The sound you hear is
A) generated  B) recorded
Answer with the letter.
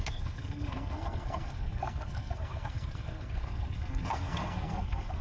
A